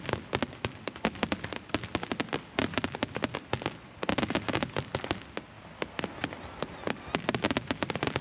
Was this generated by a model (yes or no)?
no